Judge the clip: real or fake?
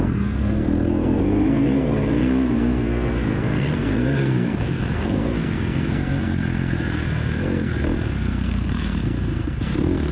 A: fake